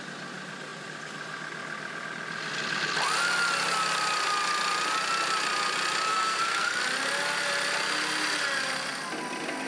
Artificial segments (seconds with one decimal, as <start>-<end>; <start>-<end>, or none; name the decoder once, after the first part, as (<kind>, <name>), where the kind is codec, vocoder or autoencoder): 6.1-6.8 (codec, SNAC)